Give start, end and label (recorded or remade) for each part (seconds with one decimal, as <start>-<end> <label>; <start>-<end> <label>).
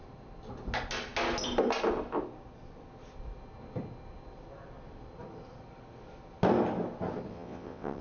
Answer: 0.0-7.3 recorded; 7.3-8.0 remade